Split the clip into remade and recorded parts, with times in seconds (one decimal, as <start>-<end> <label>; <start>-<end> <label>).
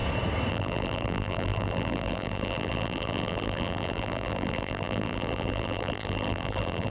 0.0-0.5 recorded; 0.5-6.9 remade